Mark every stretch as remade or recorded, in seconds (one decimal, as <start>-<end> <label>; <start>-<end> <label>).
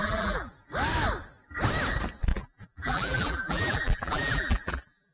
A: 0.0-0.5 remade; 0.5-2.3 recorded; 2.3-5.1 remade